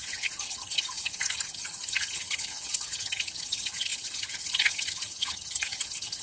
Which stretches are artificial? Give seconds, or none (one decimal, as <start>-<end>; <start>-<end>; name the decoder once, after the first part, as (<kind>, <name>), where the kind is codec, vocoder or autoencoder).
0.0-6.2 (vocoder, HiFi-GAN)